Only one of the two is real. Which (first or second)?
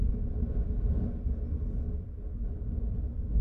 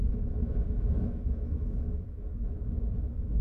first